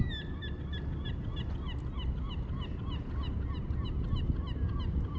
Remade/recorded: recorded